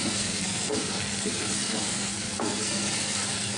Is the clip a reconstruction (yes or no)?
yes